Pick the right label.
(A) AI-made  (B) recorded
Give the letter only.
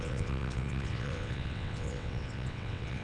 A